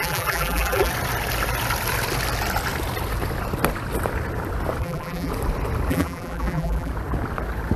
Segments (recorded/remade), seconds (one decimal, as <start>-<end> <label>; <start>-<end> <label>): 0.0-0.9 remade; 0.9-4.8 recorded; 4.8-5.3 remade; 5.3-5.9 recorded; 5.9-6.9 remade; 6.9-7.8 recorded